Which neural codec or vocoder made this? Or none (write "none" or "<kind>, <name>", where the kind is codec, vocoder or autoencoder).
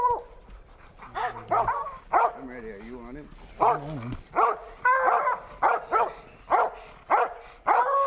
none